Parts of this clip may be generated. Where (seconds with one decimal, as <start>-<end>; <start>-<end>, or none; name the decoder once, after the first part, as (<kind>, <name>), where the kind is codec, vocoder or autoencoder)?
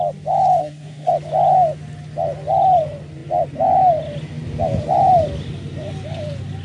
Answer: 0.6-1.1 (codec, SNAC)